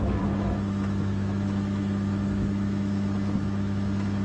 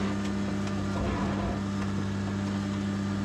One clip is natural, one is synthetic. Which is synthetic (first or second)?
first